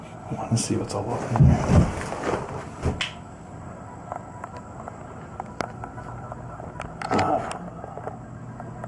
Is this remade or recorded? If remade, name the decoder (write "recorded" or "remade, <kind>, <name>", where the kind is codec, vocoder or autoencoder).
recorded